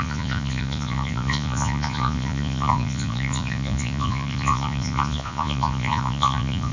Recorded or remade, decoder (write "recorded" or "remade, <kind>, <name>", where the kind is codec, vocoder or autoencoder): remade, vocoder, Vocos